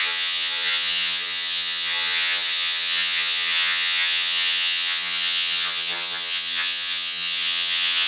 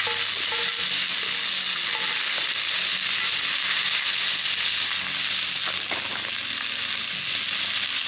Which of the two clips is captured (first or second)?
second